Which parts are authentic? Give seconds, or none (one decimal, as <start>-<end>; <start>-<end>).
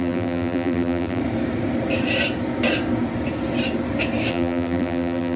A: 1.2-4.3